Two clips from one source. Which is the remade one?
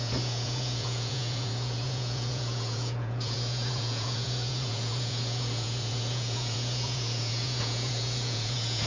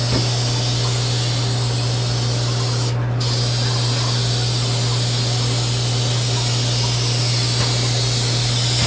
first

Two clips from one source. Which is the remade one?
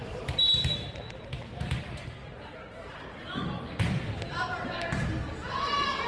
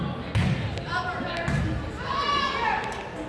first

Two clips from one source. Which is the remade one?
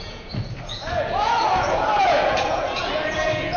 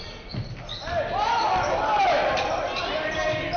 first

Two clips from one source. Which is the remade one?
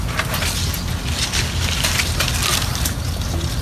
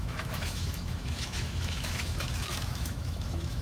second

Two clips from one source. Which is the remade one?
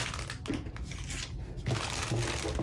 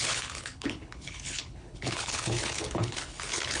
second